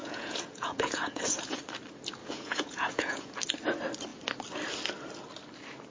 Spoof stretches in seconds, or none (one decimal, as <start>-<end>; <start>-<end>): 0.0-1.6; 2.2-3.3